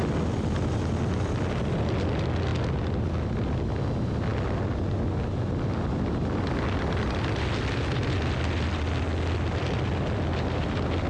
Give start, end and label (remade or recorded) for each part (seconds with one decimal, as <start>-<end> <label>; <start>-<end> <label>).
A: 0.0-11.1 recorded